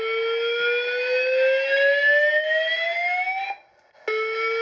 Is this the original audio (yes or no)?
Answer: yes